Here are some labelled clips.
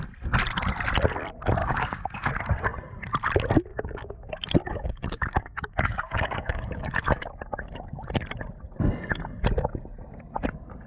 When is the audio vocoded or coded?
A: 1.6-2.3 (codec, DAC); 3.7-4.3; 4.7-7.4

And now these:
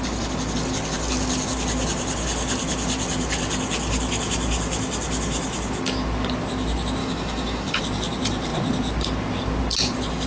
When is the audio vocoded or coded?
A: 7.0-7.8 (codec, DAC)

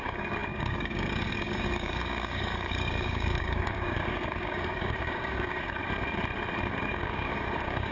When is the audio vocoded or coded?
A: 0.0-5.8 (codec, DAC); 6.6-7.9

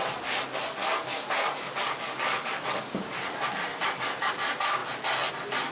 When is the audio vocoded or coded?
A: 0.8-3.0 (codec, DAC); 3.7-4.3

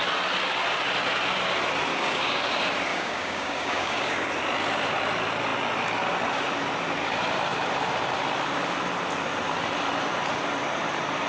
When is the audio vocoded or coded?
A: 1.9-2.4 (codec, DAC); 2.9-4.3

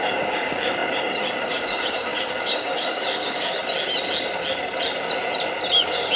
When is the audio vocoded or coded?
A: 0.0-3.6 (codec, DAC); 5.8-6.2